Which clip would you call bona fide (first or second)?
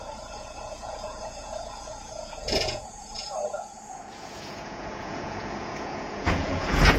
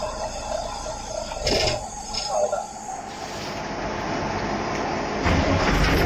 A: second